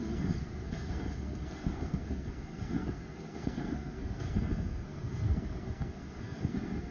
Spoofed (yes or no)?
yes